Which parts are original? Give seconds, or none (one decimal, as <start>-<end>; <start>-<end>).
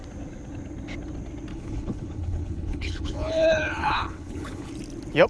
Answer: 0.0-1.5; 4.7-5.3